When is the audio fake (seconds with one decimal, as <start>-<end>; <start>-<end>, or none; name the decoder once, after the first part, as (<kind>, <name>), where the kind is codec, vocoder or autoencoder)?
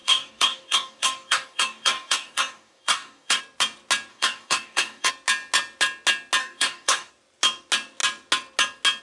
0.0-3.4 (codec, DAC); 4.1-5.1; 6.4-7.1